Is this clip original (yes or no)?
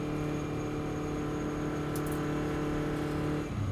yes